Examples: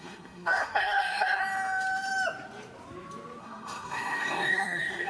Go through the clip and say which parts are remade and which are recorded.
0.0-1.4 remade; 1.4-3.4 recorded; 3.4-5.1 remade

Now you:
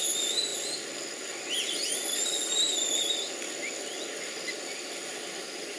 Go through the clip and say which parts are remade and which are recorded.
0.0-5.8 recorded

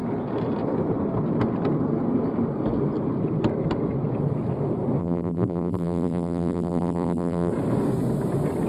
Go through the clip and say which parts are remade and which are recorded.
0.0-5.0 recorded; 5.0-7.5 remade; 7.5-8.7 recorded

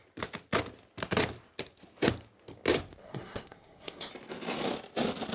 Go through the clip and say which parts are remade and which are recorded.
0.0-3.0 recorded; 3.0-4.1 remade; 4.1-5.3 recorded